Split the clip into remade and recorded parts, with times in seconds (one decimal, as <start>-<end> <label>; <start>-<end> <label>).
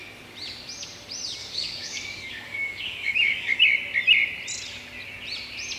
0.0-1.4 recorded; 1.4-3.6 remade; 3.6-5.8 recorded